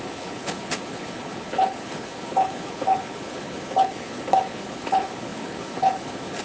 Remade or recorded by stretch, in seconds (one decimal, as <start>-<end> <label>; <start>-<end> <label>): 0.0-6.4 remade